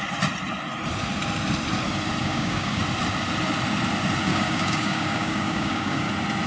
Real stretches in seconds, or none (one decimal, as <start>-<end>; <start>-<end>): 0.0-2.2; 2.8-4.3; 6.1-6.5